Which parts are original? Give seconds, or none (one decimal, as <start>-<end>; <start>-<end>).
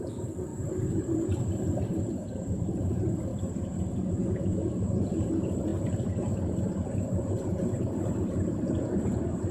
3.3-4.1